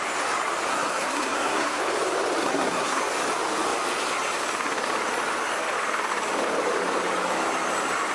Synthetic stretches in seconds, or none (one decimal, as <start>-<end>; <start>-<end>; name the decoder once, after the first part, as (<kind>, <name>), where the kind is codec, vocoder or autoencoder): 0.7-1.8 (codec, SNAC); 2.4-3.0